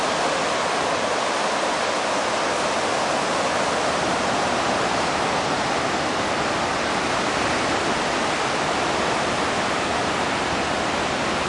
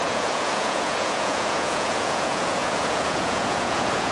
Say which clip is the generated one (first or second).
second